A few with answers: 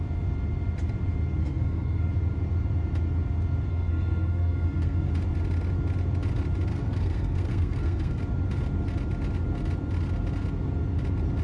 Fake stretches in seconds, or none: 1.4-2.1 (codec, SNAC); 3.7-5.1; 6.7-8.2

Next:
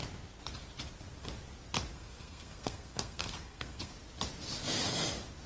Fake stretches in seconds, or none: 1.9-3.9 (codec, SNAC)